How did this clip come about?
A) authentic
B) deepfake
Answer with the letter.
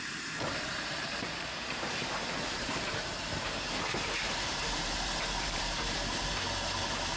B